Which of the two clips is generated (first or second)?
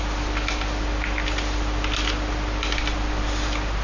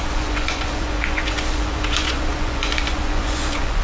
second